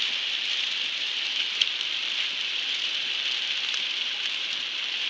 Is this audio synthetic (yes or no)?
yes